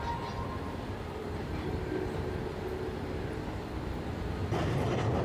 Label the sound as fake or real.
real